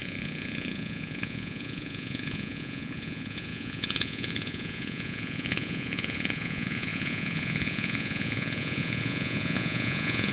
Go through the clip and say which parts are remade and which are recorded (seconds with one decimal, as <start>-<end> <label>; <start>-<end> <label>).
0.0-10.3 remade